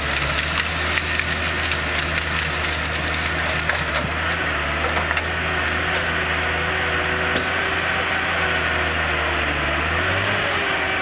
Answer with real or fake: real